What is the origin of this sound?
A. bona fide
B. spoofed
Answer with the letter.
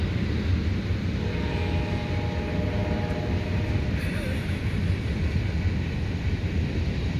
A